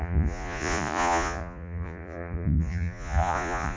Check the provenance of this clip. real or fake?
fake